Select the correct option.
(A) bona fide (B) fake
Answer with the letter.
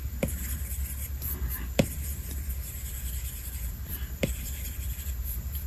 B